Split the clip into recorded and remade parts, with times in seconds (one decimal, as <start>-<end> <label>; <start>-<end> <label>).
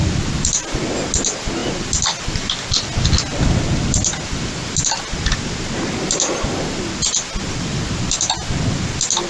0.0-9.3 recorded